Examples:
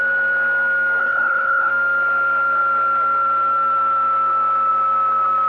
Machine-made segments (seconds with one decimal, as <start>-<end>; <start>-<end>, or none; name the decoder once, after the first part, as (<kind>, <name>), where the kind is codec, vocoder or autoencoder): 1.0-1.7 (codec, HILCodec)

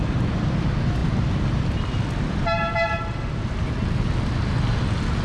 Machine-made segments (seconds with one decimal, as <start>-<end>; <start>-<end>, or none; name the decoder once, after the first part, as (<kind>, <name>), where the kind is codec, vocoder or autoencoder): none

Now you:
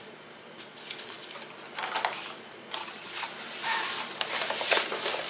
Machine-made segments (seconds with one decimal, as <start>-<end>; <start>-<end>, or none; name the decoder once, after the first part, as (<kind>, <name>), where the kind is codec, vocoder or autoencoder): 2.8-3.3 (vocoder, HiFi-GAN)

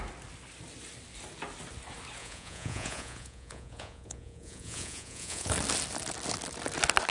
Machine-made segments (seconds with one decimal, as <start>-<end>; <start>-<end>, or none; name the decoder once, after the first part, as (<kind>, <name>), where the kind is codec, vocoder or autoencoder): 2.2-5.5 (vocoder, Vocos)

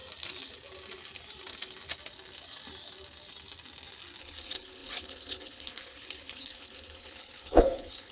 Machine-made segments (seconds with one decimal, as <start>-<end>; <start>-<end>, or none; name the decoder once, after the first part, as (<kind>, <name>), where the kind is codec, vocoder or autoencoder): 4.2-8.1 (codec, HILCodec)